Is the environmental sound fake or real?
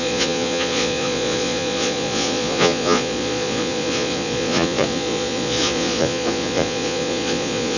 fake